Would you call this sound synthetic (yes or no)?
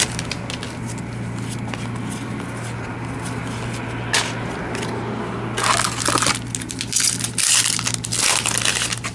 no